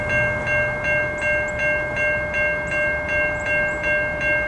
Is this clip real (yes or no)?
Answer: yes